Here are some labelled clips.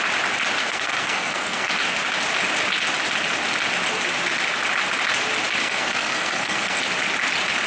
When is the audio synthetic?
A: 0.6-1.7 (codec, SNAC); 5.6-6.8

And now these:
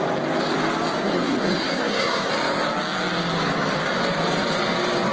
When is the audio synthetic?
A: 1.0-2.3 (codec, SNAC)

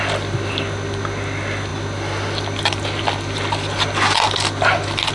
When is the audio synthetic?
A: none